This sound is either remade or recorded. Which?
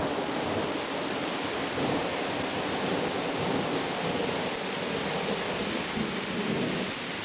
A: recorded